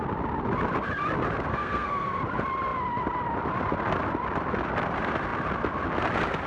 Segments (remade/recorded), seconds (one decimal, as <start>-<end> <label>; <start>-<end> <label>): 0.0-1.5 recorded; 1.5-2.2 remade; 2.2-6.5 recorded